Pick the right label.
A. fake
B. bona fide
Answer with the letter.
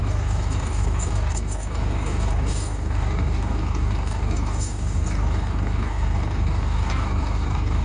A